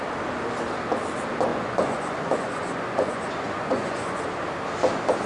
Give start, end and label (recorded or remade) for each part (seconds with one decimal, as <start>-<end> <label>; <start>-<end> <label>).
0.0-1.5 recorded; 1.5-4.2 remade; 4.2-5.3 recorded